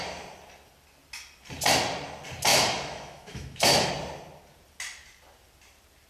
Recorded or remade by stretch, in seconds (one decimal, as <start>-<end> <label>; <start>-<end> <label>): 0.0-2.5 recorded; 2.5-3.9 remade; 3.9-6.1 recorded